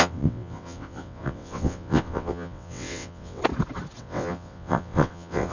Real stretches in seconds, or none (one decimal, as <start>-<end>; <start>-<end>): 3.4-4.0